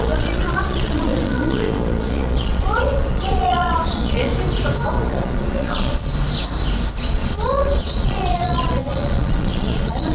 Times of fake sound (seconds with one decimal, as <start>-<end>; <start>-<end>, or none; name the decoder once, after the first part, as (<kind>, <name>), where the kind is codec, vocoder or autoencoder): 0.0-4.3 (vocoder, Vocos); 4.9-6.1; 7.0-10.1